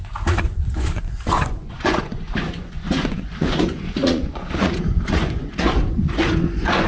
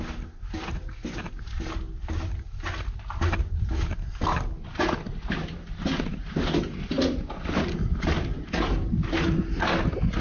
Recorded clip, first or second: second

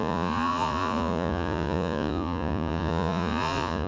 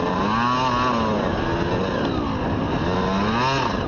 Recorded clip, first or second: second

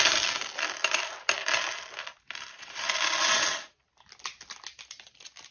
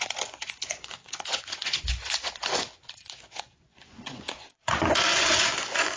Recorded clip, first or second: first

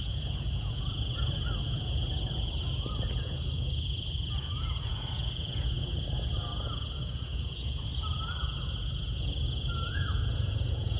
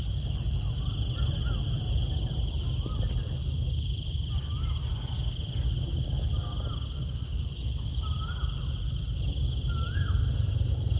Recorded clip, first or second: second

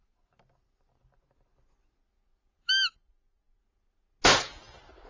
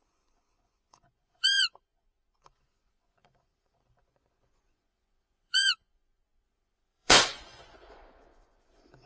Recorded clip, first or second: first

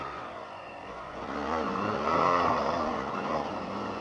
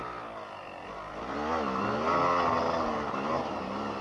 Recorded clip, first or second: second